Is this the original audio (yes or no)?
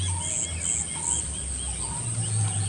yes